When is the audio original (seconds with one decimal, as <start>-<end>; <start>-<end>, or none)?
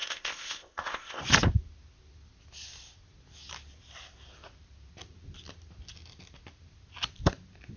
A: 1.2-7.8